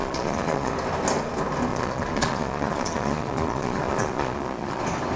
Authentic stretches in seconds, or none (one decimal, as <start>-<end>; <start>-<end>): 0.7-1.7; 4.8-5.2